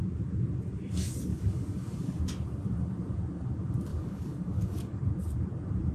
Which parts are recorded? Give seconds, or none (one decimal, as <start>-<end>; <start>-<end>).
0.0-1.3; 2.2-3.9; 5.0-5.9